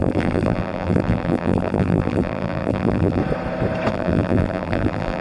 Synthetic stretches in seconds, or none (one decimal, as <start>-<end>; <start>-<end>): 0.0-3.2; 3.9-5.2